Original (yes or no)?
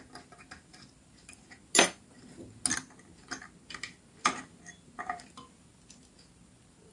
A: yes